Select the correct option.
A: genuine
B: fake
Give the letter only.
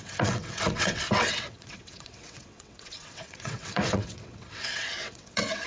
B